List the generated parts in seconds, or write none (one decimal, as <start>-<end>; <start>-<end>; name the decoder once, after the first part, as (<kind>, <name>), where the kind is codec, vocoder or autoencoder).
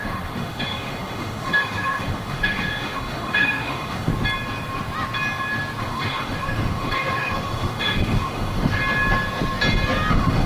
0.0-4.1 (autoencoder, DAC-VAE); 5.8-8.8; 10.1-10.5